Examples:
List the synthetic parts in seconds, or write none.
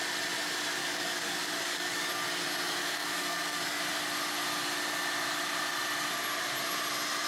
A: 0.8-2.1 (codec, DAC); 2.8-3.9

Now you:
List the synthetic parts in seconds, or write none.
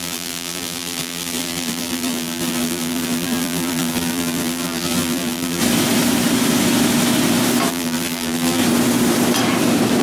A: 0.0-5.6 (vocoder, BigVGAN v2); 7.7-8.6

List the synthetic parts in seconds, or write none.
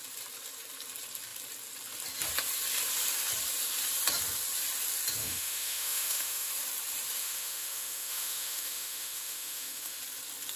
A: 5.2-6.5 (autoencoder, DAC-VAE); 7.2-10.0